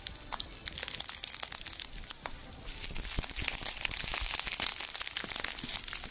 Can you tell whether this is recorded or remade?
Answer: recorded